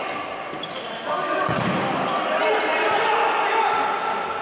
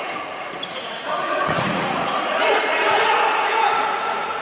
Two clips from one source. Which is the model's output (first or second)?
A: second